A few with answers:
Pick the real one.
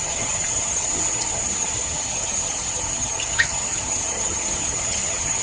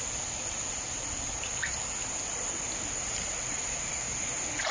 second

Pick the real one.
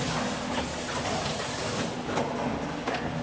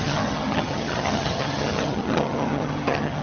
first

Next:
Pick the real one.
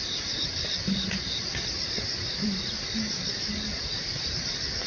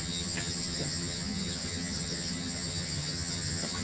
first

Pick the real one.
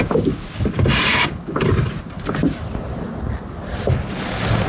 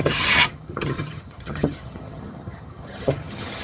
first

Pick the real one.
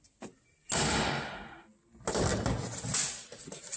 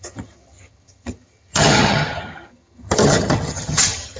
first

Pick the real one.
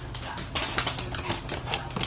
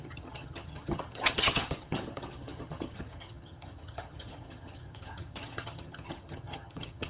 first